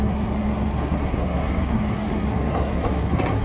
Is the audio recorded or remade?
remade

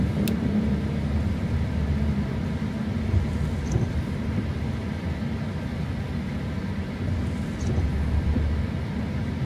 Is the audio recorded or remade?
recorded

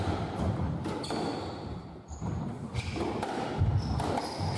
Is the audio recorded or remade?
remade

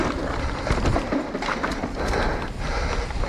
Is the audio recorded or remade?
recorded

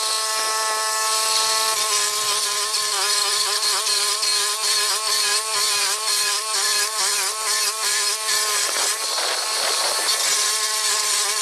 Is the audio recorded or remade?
recorded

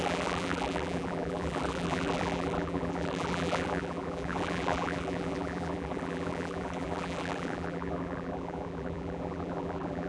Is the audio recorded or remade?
remade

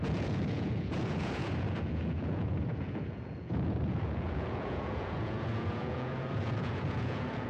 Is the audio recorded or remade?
remade